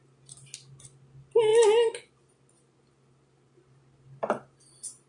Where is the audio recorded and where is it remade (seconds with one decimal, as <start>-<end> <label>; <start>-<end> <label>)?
0.0-5.1 recorded